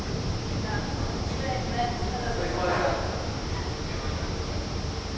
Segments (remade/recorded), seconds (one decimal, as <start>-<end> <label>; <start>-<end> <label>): 0.0-5.2 recorded